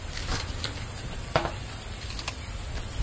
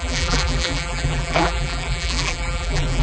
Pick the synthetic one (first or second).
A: second